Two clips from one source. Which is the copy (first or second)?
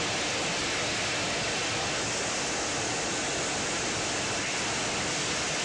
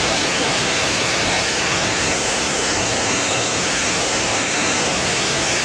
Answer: second